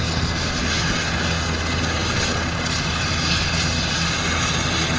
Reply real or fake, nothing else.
real